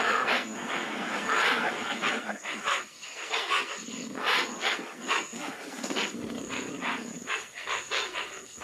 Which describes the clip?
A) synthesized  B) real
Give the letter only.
A